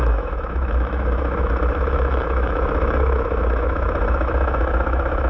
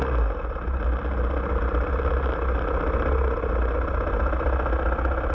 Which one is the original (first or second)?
second